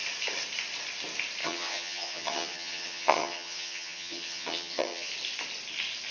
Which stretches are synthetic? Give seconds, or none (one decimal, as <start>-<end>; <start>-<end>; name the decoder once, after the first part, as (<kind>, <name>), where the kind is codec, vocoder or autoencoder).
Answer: 1.4-5.1 (vocoder, HiFi-GAN)